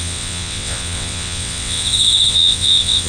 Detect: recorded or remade remade